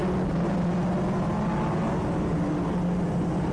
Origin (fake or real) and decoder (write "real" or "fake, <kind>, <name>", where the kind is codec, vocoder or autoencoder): real